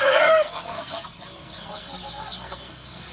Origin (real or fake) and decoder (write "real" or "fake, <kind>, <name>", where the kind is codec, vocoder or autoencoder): fake, codec, SNAC